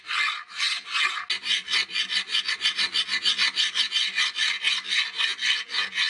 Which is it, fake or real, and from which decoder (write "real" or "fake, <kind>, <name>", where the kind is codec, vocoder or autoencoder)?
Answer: real